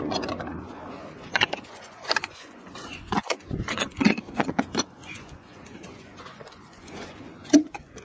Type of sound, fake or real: fake